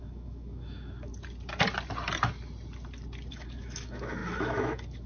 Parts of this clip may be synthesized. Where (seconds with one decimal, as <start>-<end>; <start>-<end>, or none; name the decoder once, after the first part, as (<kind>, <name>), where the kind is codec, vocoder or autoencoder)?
0.0-1.1 (autoencoder, DAC-VAE); 3.3-5.1